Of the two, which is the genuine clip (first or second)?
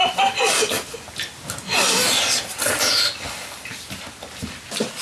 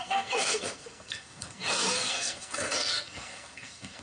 first